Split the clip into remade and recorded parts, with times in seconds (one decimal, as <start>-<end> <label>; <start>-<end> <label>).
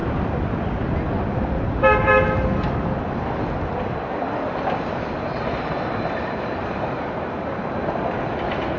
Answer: 0.0-4.9 recorded; 4.9-7.6 remade; 7.6-8.8 recorded